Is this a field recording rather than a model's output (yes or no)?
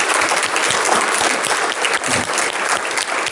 yes